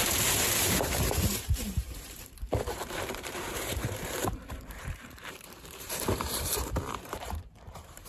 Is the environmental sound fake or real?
fake